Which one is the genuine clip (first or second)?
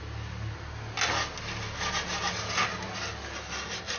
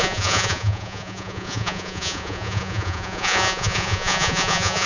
first